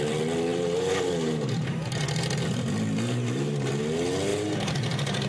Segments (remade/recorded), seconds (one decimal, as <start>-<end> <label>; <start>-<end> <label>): 0.0-0.5 recorded; 0.5-3.7 remade; 3.7-4.3 recorded; 4.3-5.3 remade